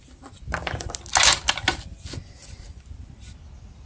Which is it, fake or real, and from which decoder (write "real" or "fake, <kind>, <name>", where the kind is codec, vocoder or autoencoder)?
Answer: real